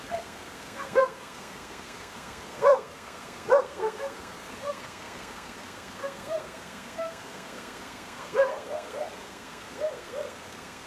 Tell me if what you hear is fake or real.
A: fake